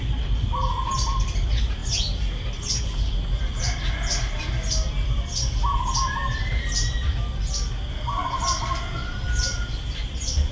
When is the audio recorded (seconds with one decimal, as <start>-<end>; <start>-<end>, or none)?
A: 0.0-10.5